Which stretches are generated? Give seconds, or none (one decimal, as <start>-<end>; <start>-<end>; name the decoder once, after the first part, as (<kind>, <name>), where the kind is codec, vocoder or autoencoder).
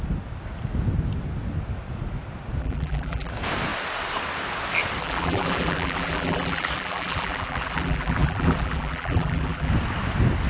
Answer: 2.6-3.3 (vocoder, BigVGAN v2); 5.0-9.7